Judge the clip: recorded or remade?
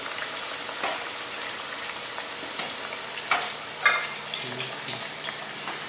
recorded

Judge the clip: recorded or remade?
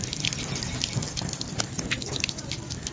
recorded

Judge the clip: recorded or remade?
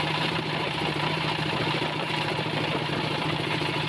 remade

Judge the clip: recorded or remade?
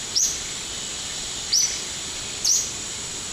remade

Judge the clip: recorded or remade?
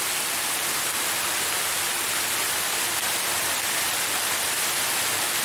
recorded